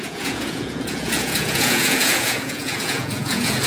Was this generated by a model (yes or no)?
yes